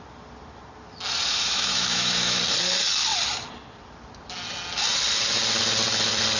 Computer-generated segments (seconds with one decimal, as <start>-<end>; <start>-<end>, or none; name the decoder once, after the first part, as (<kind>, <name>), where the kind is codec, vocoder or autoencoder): 1.3-2.4 (autoencoder, DAC-VAE)

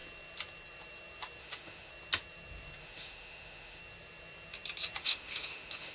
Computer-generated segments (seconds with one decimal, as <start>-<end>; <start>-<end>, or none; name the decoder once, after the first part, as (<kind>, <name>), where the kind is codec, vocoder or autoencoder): 1.4-1.9 (autoencoder, DAC-VAE); 2.8-3.8; 5.0-5.9

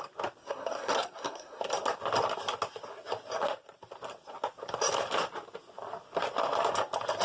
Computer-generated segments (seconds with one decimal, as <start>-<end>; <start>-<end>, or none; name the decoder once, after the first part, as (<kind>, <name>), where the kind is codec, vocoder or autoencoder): 0.4-1.6 (codec, SNAC)

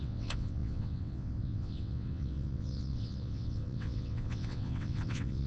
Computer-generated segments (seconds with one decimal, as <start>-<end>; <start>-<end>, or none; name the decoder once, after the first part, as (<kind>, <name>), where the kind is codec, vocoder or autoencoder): 0.0-5.5 (vocoder, WaveNeXt)